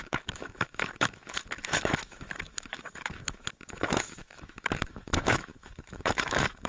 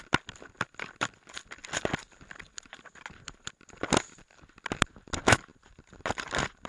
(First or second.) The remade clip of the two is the first